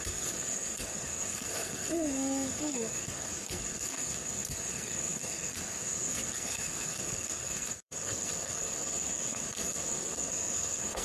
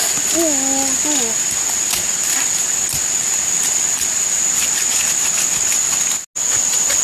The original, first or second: second